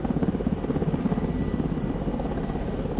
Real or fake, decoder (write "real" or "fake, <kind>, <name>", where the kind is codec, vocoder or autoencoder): real